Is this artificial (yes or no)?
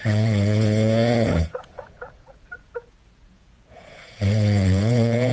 yes